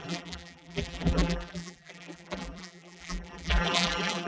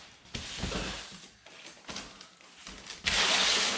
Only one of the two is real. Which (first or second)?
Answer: second